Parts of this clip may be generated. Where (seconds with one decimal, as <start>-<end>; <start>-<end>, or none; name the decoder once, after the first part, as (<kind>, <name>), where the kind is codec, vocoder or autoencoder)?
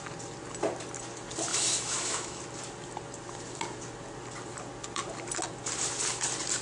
1.5-2.4 (autoencoder, DAC-VAE)